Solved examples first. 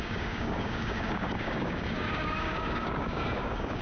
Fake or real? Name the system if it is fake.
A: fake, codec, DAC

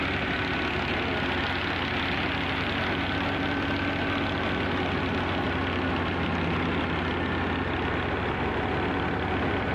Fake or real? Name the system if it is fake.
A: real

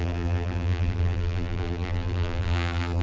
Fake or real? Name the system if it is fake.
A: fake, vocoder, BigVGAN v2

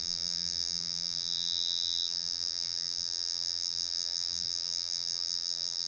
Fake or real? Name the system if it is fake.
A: fake, vocoder, BigVGAN v2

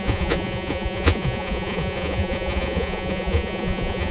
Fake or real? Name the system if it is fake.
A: fake, vocoder, Vocos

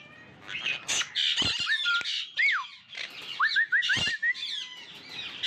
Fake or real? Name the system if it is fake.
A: real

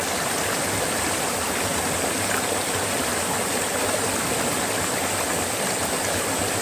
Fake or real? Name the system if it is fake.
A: real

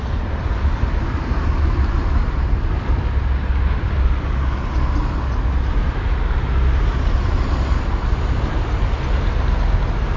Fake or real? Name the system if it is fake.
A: real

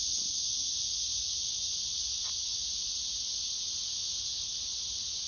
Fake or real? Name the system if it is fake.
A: real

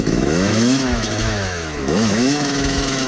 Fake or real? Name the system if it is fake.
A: fake, autoencoder, DAC-VAE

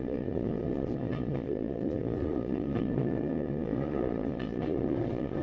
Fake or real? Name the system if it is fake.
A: fake, vocoder, Vocos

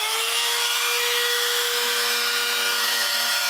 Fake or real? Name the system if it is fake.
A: fake, autoencoder, DAC-VAE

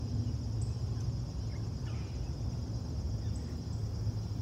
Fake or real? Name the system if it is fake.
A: real